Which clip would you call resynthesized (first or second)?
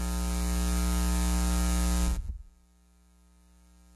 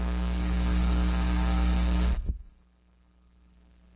second